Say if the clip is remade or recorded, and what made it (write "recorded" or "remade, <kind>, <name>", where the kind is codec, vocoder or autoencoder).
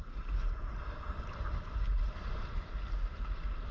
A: remade, vocoder, BigVGAN v2